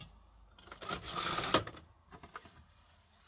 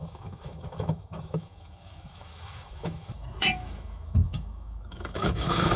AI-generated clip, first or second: second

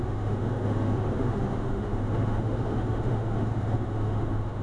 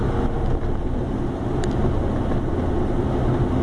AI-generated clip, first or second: first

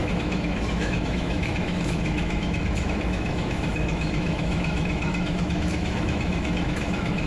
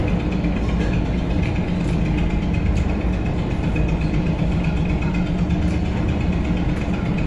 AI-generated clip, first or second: first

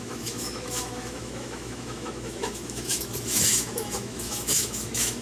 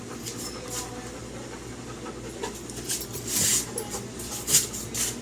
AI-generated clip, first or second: first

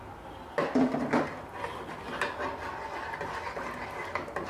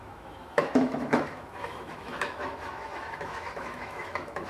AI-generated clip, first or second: second